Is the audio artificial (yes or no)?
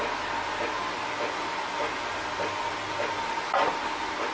no